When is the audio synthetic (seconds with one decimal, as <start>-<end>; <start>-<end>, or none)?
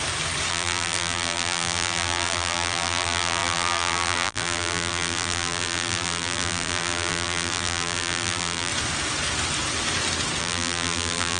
0.5-8.7; 10.4-11.4